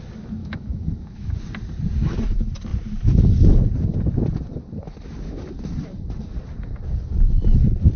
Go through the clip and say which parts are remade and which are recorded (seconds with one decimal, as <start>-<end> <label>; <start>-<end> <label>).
0.0-0.4 recorded; 0.4-1.3 remade; 1.3-8.0 recorded